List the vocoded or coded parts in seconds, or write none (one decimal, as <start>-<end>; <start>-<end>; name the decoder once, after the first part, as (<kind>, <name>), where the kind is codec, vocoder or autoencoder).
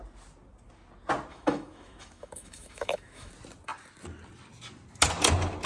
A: 1.3-3.3 (autoencoder, DAC-VAE)